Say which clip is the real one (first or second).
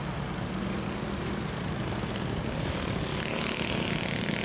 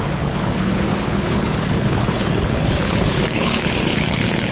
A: first